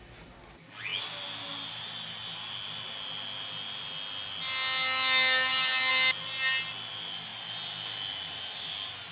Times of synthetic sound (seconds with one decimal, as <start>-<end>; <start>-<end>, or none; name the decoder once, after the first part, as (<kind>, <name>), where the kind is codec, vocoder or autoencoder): none